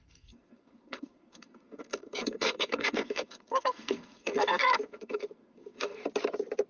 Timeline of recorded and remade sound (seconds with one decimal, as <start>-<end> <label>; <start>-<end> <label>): 0.0-6.0 remade; 6.0-6.7 recorded